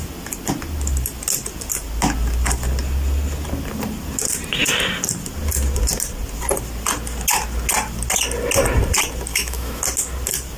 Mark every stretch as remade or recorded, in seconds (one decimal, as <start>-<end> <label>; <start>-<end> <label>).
0.0-9.3 recorded; 9.3-9.8 remade; 9.8-10.6 recorded